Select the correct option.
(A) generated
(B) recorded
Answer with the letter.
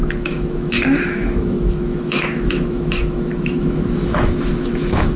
A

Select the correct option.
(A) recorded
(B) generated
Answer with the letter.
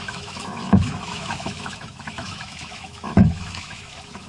B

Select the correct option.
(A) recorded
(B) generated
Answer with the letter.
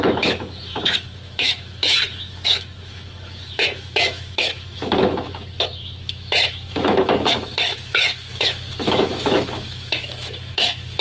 B